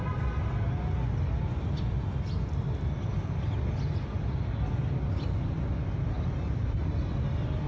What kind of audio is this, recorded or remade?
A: recorded